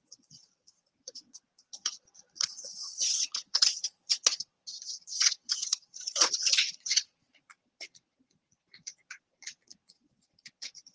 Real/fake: fake